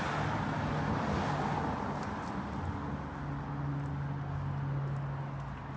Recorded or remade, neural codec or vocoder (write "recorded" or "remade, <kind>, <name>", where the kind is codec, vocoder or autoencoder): recorded